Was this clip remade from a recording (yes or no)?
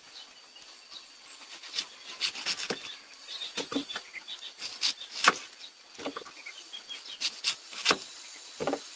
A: no